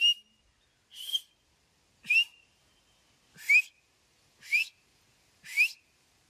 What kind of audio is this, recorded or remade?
recorded